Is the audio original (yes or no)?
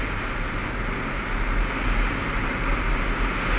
yes